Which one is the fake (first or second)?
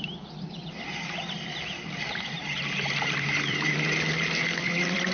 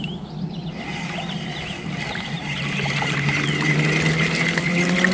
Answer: first